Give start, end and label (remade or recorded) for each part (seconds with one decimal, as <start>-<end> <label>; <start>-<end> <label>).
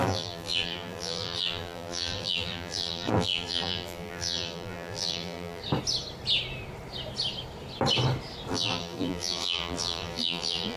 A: 0.0-5.6 remade; 5.6-8.5 recorded; 8.5-10.8 remade